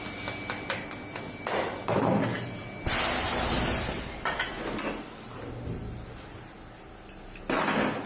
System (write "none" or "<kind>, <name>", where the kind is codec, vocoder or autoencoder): none